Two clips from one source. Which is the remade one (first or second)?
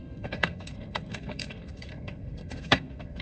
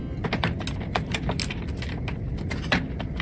first